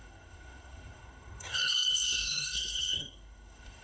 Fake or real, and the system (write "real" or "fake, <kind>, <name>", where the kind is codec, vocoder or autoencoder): fake, codec, SNAC